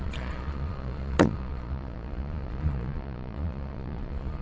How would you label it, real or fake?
fake